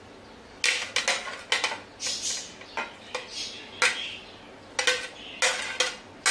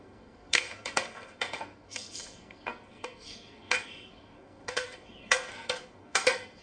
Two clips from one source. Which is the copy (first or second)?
second